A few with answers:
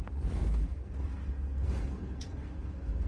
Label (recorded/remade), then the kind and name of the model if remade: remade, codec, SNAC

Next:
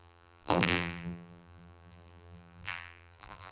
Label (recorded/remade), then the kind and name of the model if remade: remade, vocoder, BigVGAN v2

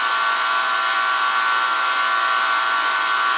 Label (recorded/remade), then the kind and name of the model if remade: remade, vocoder, Vocos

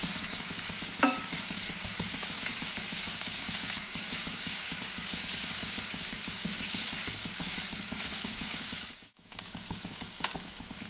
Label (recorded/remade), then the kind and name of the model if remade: remade, codec, DAC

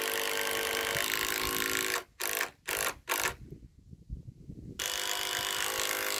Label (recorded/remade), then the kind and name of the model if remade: recorded